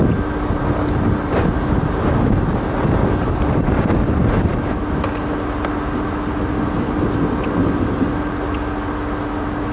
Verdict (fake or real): real